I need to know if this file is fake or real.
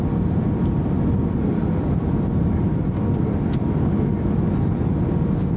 real